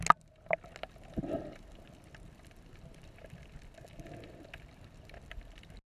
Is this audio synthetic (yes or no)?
no